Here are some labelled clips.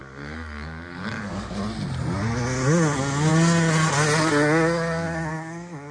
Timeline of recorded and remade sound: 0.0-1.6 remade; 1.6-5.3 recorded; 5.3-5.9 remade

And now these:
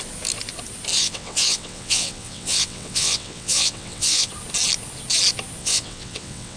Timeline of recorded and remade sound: 0.0-0.9 recorded; 0.9-4.3 remade; 4.3-5.6 recorded; 5.6-6.6 remade

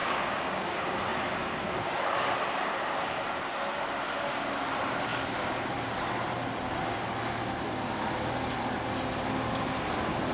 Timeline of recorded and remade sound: 0.0-0.7 remade; 0.7-10.3 recorded

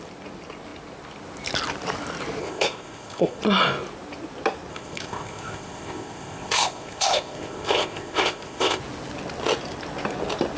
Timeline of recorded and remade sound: 0.0-2.4 recorded; 2.4-3.4 remade; 3.4-4.7 recorded; 4.7-8.8 remade; 8.8-10.6 recorded

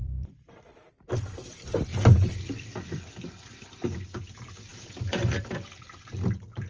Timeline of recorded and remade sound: 0.0-0.9 remade; 0.9-1.9 recorded; 1.9-3.3 remade; 3.3-4.7 recorded; 4.7-6.7 remade

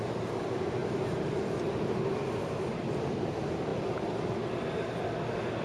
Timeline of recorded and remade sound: 0.0-5.6 recorded

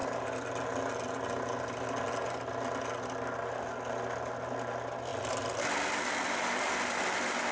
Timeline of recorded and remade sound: 0.0-7.5 recorded

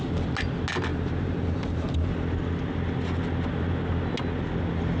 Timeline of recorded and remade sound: 0.0-0.9 recorded; 0.9-1.9 remade; 1.9-5.0 recorded